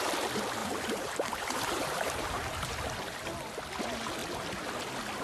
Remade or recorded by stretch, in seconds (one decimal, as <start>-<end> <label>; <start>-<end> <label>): 0.0-0.6 recorded; 0.6-2.8 remade; 2.8-5.2 recorded